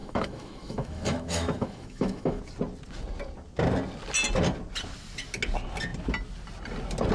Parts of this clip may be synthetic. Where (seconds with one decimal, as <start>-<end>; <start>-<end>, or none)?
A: 0.0-2.4